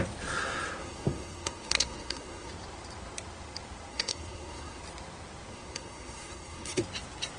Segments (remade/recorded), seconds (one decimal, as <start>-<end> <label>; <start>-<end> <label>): 0.0-0.8 recorded; 0.8-2.5 remade; 2.5-3.9 recorded; 3.9-4.8 remade; 4.8-5.5 recorded; 5.5-6.8 remade; 6.8-7.4 recorded